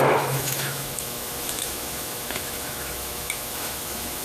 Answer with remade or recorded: remade